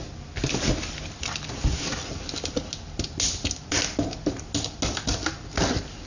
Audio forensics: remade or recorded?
recorded